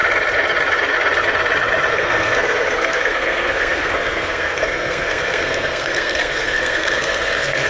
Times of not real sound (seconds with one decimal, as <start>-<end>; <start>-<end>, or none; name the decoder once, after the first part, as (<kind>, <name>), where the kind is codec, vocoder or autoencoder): 1.9-7.7 (codec, SNAC)